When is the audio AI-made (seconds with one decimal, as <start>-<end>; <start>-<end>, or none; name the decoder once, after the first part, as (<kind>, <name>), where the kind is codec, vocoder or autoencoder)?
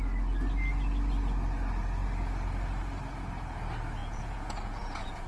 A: 4.0-5.3 (vocoder, Vocos)